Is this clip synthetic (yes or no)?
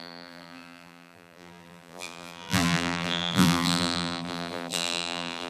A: yes